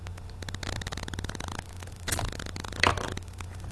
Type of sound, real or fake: real